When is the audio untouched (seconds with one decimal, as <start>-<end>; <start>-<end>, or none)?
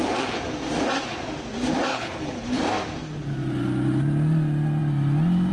0.0-1.9; 2.6-5.5